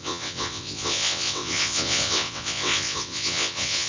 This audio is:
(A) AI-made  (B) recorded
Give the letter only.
A